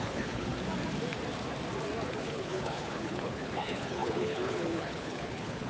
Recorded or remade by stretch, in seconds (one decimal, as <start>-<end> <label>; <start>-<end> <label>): 0.0-0.5 remade; 0.5-2.1 recorded; 2.1-5.7 remade